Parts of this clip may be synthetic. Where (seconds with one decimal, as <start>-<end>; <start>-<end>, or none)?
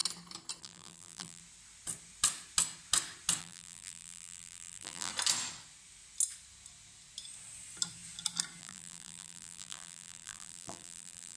0.6-1.4; 3.4-5.1; 8.6-11.4